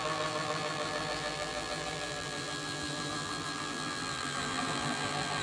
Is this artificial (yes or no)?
yes